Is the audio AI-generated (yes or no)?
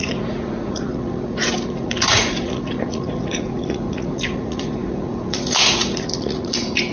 yes